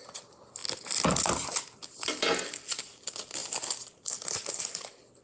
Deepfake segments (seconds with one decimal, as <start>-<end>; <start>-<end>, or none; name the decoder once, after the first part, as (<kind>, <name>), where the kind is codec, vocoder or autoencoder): none